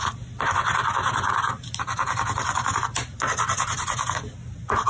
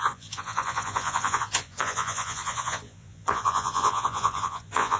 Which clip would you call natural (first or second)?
first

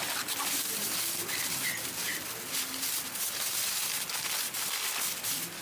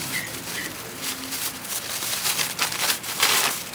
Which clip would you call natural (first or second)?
first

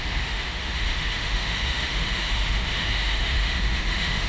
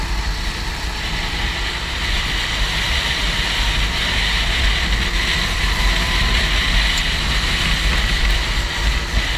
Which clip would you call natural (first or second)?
second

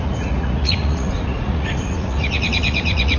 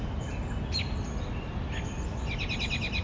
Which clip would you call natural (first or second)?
second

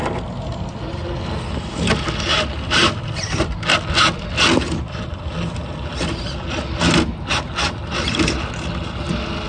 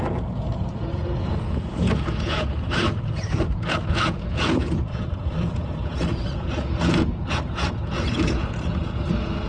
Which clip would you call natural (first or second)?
first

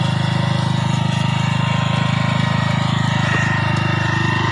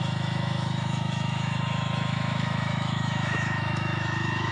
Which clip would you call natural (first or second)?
first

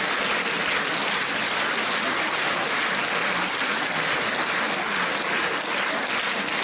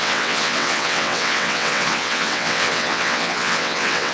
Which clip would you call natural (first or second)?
first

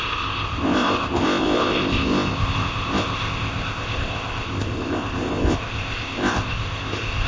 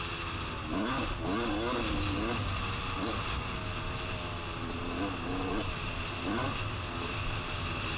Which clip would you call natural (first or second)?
second